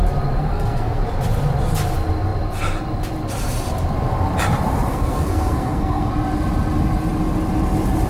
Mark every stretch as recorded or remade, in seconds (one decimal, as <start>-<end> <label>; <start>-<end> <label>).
0.0-0.4 recorded; 0.4-1.0 remade; 1.0-4.9 recorded; 4.9-6.1 remade; 6.1-8.1 recorded